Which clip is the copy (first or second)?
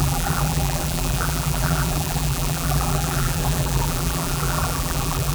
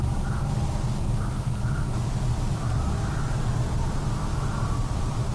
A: first